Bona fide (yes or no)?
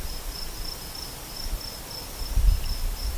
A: yes